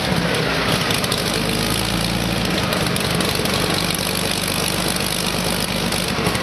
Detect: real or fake real